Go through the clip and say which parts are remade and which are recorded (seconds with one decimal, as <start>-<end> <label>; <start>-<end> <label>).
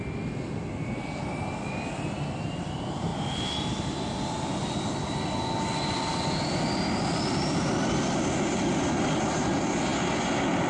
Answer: 0.0-10.7 recorded